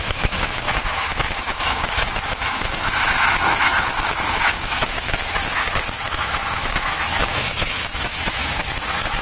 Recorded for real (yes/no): no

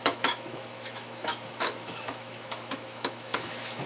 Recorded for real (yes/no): no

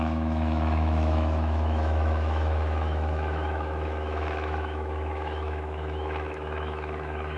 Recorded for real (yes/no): no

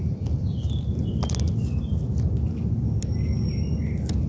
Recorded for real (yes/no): yes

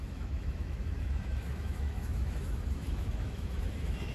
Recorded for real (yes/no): no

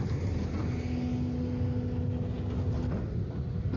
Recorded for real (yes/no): yes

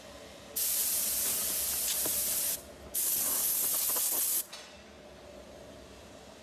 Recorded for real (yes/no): yes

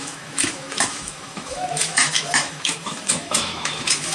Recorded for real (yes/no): no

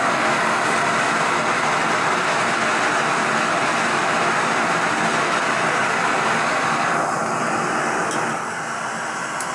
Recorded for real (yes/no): yes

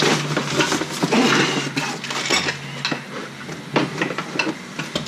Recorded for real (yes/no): yes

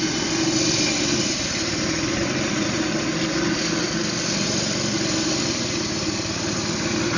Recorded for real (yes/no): yes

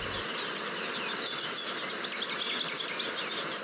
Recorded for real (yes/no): yes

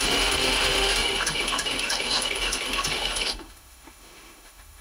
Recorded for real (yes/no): no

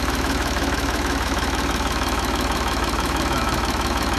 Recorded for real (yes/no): no